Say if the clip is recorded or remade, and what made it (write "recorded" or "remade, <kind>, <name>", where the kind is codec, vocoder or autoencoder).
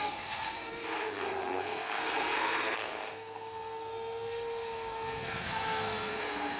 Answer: remade, codec, SNAC